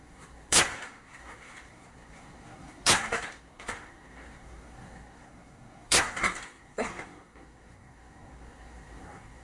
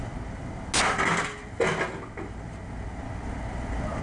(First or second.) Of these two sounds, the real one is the second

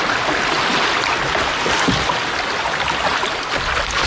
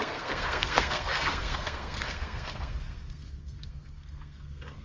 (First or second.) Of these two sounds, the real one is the first